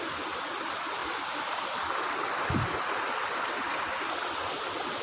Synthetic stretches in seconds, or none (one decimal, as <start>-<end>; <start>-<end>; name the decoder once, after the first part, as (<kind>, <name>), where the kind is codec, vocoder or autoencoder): none